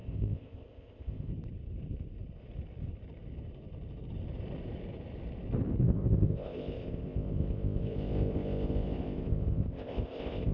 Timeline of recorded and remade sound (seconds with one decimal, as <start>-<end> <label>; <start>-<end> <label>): 0.0-1.3 remade; 1.3-5.8 recorded; 5.8-10.5 remade